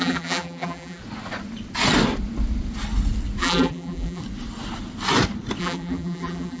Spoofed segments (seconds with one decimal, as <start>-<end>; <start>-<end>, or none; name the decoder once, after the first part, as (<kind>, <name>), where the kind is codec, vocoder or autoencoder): 0.0-1.0 (vocoder, BigVGAN v2); 3.4-4.2; 5.6-6.6